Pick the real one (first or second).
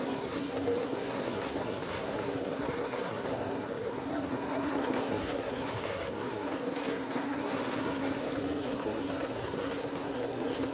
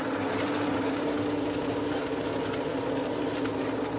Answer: second